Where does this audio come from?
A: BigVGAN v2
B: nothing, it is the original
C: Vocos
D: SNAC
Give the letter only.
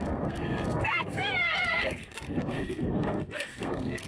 D